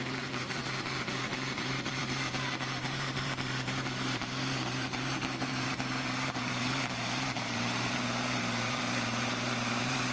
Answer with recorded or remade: remade